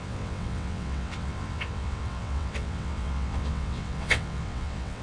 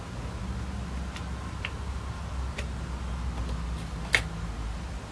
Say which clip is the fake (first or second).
first